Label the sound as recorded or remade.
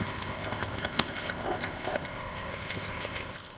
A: remade